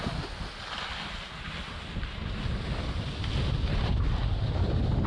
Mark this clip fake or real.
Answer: real